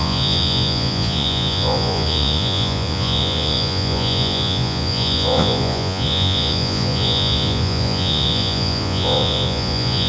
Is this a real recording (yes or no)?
no